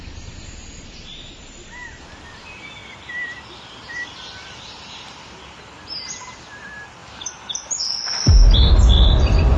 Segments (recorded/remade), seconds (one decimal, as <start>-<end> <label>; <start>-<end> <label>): 0.0-2.8 remade; 2.8-3.7 recorded; 3.7-9.6 remade